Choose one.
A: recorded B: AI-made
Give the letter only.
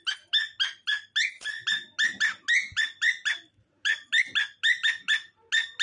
A